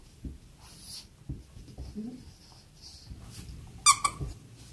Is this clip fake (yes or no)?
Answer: no